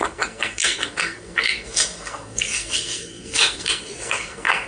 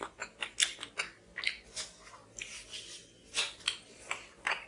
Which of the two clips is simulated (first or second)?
first